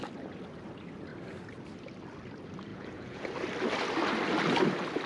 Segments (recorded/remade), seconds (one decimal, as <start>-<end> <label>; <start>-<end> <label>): 0.0-2.7 recorded; 2.7-3.3 remade; 3.3-5.1 recorded